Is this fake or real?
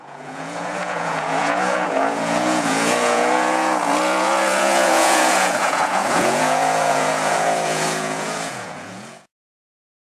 fake